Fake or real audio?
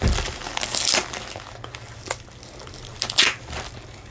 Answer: real